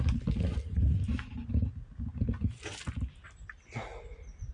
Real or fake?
real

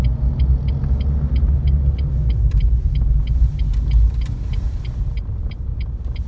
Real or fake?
real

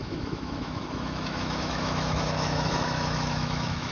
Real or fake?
fake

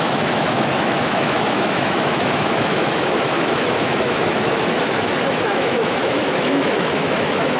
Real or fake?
fake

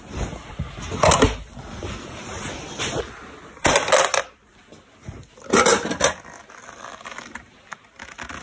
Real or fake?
real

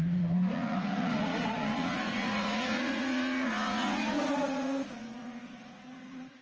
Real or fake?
fake